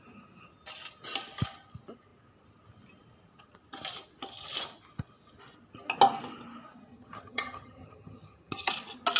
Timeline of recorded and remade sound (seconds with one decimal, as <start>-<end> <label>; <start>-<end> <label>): 0.0-6.9 recorded; 6.9-8.7 remade; 8.7-9.2 recorded